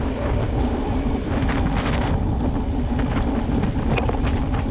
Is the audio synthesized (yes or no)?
no